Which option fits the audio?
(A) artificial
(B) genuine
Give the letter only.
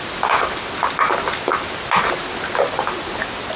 B